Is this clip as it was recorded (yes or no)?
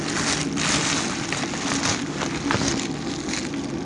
yes